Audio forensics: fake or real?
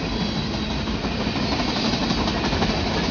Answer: real